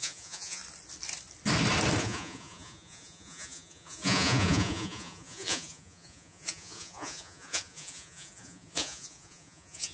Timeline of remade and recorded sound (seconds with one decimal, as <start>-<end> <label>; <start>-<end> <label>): 0.0-0.6 remade; 0.6-2.0 recorded; 2.0-9.9 remade